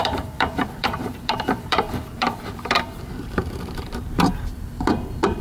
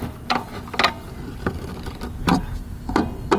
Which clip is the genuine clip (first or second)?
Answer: second